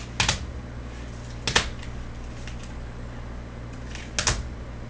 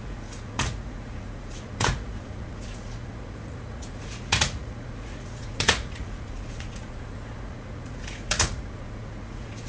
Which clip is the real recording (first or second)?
first